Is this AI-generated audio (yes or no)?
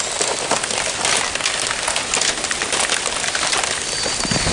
no